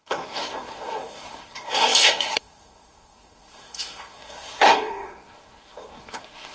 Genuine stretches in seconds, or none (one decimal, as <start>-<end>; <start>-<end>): none